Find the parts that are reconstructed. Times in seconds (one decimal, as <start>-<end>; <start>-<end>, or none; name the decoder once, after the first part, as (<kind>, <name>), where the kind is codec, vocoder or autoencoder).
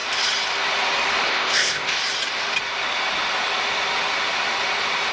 1.3-2.0 (codec, ZipCodec)